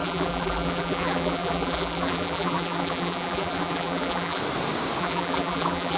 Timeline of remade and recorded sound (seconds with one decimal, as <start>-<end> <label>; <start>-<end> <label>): 0.0-4.4 remade; 4.4-5.0 recorded; 5.0-6.0 remade